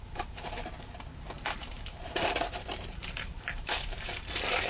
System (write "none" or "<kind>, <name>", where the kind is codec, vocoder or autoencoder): vocoder, BigVGAN v2